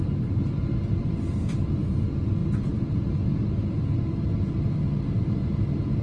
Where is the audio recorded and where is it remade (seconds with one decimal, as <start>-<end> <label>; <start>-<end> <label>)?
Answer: 0.0-6.0 recorded